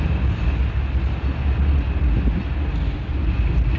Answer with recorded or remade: recorded